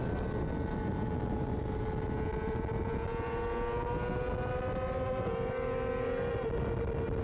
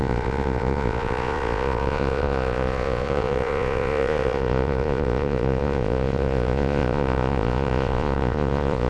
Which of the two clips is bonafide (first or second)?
first